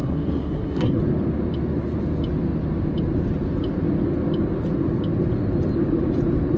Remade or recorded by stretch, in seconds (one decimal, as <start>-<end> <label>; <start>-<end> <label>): 0.0-1.0 remade; 1.0-6.6 recorded